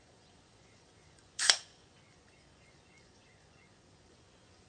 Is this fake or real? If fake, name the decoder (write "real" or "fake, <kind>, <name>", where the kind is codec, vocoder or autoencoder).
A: fake, vocoder, Vocos